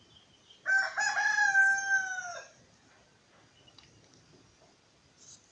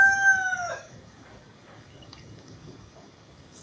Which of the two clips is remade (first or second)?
second